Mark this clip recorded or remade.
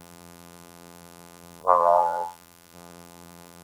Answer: remade